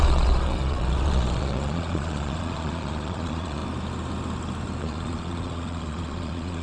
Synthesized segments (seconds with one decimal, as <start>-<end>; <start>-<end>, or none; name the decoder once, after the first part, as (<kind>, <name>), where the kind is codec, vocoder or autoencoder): 0.0-3.6 (vocoder, Vocos); 4.8-6.6